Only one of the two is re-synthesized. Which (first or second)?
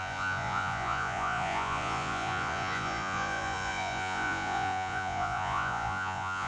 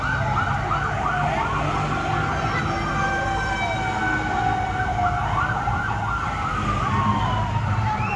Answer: first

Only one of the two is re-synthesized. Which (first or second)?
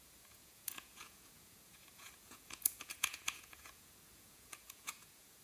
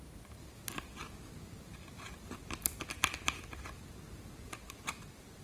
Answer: first